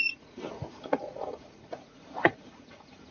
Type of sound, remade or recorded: remade